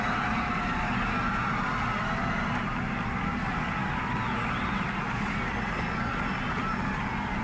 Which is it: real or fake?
real